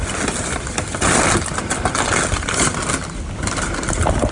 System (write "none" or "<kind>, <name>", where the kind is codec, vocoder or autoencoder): none